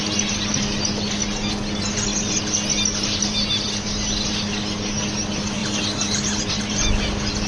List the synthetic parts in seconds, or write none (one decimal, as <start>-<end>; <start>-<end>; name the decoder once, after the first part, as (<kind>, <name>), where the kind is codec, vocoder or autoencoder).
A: none